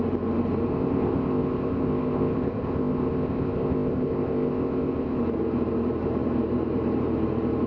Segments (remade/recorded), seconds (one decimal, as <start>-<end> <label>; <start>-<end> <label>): 0.0-0.7 recorded; 0.7-5.2 remade; 5.2-7.7 recorded